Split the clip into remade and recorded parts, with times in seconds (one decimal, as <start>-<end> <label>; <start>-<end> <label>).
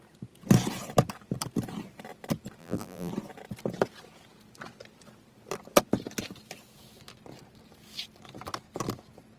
0.0-2.6 recorded; 2.6-3.1 remade; 3.1-9.4 recorded